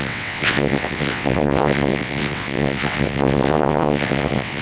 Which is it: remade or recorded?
remade